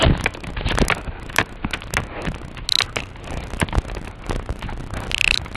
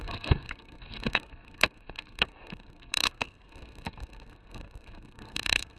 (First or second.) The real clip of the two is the first